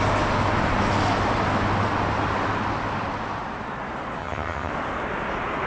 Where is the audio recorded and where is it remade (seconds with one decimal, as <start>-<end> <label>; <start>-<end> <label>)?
0.0-4.2 recorded; 4.2-4.7 remade; 4.7-5.7 recorded